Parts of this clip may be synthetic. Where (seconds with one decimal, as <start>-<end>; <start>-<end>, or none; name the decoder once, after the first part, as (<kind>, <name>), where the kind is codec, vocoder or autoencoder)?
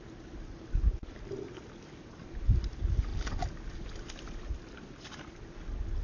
none